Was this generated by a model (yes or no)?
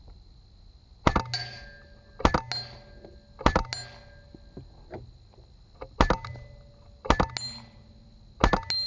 no